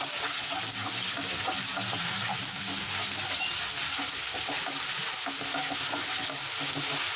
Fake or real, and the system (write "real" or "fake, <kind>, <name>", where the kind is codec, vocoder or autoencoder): real